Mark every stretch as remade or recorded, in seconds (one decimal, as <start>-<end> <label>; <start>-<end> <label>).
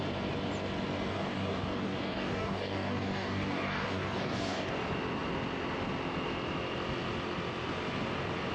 0.0-1.1 recorded; 1.1-4.7 remade; 4.7-8.5 recorded